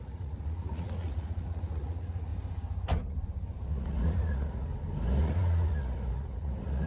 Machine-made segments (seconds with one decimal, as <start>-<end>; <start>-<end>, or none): 0.0-2.3; 3.7-4.7; 5.2-6.9